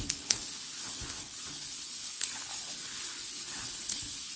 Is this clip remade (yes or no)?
yes